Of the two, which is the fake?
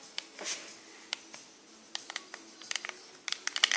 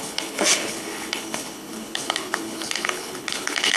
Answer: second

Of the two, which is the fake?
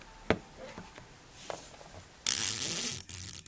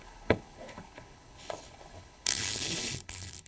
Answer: second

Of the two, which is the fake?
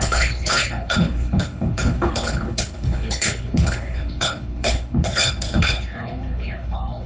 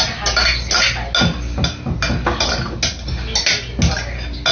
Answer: first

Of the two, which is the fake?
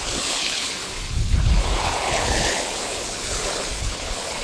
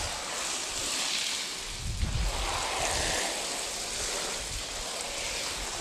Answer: first